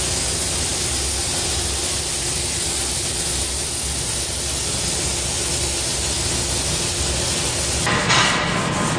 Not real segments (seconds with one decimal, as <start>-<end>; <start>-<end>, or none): none